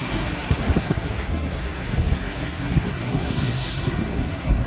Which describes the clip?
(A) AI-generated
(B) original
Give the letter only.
A